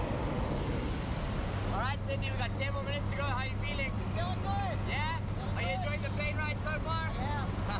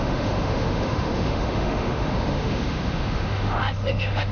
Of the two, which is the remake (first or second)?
second